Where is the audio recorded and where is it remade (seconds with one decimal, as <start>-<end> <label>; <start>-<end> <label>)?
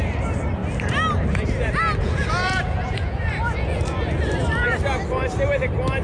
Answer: 0.0-2.0 recorded; 2.0-3.8 remade; 3.8-6.0 recorded